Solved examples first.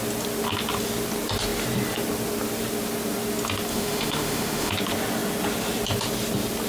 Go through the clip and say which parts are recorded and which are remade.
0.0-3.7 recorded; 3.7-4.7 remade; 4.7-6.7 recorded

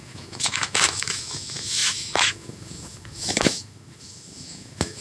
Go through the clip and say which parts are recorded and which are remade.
0.0-5.0 remade